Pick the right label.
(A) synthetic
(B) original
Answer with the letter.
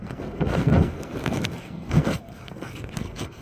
A